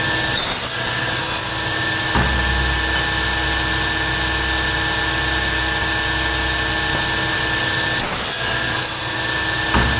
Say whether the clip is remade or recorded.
recorded